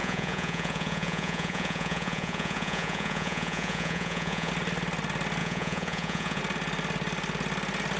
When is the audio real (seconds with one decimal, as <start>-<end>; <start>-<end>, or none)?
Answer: 4.5-5.4; 6.4-8.0